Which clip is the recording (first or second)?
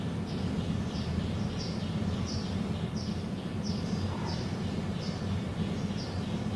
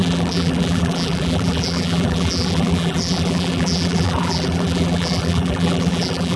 first